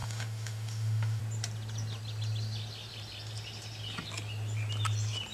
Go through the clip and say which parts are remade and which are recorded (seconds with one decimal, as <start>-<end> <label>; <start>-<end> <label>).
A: 0.0-1.2 remade; 1.2-5.3 recorded